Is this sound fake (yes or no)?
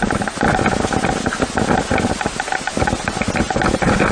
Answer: no